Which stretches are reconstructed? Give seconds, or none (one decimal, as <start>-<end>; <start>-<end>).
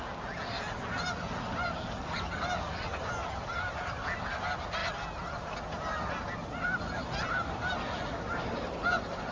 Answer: none